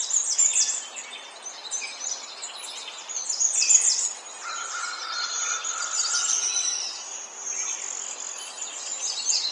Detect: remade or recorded recorded